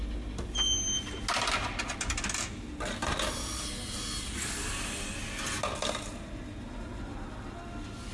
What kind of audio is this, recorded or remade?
recorded